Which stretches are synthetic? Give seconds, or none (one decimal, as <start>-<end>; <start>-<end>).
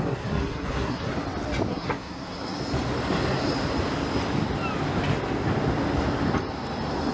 0.0-1.1; 1.7-2.6